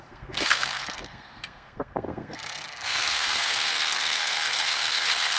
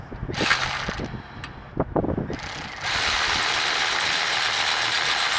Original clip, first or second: second